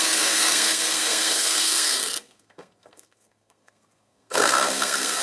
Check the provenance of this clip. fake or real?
fake